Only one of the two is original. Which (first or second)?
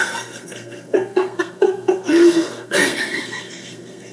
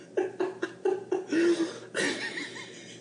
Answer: second